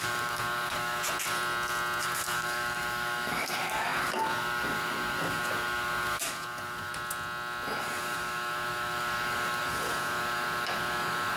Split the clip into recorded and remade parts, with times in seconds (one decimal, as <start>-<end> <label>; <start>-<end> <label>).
0.0-1.0 remade; 1.0-2.0 recorded; 2.0-6.9 remade; 6.9-7.8 recorded; 7.8-11.4 remade